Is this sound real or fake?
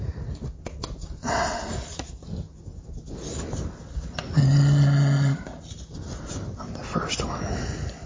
real